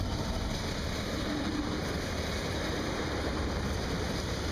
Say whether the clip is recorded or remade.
remade